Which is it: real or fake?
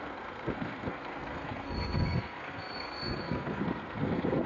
fake